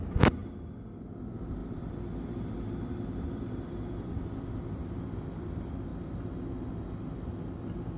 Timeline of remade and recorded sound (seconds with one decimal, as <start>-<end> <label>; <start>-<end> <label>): 0.0-8.0 recorded